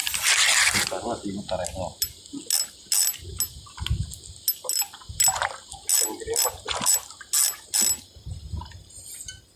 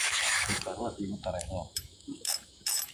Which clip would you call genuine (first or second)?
first